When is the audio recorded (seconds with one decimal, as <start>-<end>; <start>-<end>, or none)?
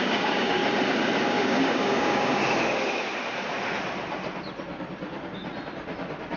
0.6-1.3; 2.4-6.4